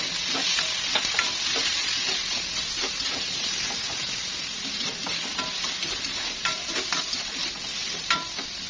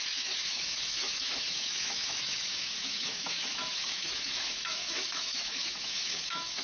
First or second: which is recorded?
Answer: first